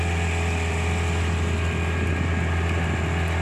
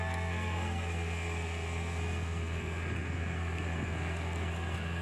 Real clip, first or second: first